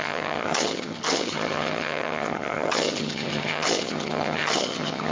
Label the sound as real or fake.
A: fake